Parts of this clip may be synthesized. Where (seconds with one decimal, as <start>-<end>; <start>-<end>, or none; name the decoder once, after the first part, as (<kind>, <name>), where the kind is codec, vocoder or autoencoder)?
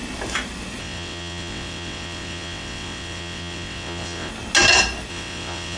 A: 0.8-4.3 (vocoder, WaveNeXt); 5.1-5.8